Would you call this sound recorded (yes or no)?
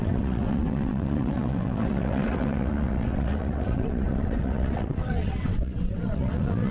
no